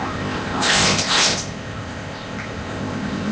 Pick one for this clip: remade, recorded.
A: remade